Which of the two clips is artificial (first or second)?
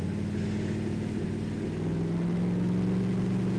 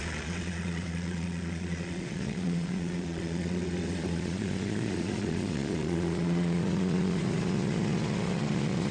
second